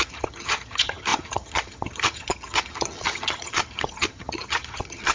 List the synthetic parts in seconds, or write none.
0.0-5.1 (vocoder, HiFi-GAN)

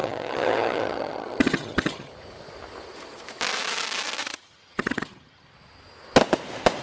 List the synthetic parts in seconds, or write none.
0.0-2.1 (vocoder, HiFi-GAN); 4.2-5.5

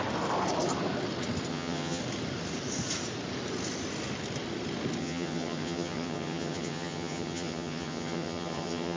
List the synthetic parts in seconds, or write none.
1.5-2.0 (vocoder, HiFi-GAN); 5.0-9.0

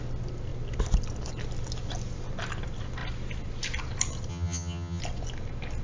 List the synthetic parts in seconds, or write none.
4.3-5.0 (vocoder, HiFi-GAN)

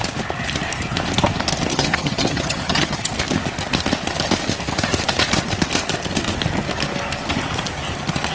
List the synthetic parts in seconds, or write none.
1.7-3.1 (vocoder, HiFi-GAN)

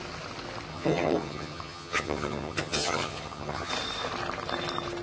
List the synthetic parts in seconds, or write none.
0.7-3.7 (vocoder, HiFi-GAN)